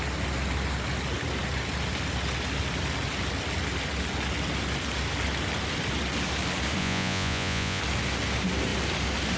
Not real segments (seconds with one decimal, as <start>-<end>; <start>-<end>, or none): 6.8-7.8